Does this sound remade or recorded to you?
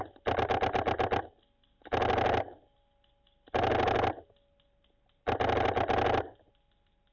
recorded